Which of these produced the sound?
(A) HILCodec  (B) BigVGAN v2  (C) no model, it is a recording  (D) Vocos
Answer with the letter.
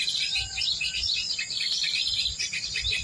C